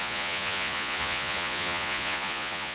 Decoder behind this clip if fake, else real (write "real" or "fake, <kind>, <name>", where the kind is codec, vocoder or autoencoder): fake, vocoder, Vocos